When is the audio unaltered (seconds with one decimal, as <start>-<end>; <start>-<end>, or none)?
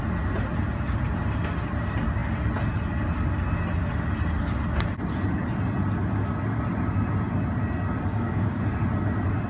0.0-8.1; 8.6-9.5